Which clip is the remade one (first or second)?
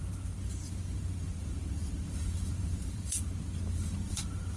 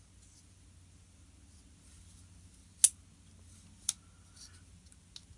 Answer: first